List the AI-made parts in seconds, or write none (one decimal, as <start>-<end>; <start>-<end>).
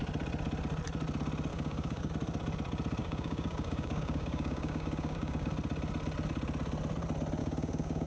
1.5-2.1; 3.0-5.5; 7.4-8.1